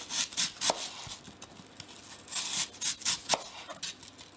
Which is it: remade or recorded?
recorded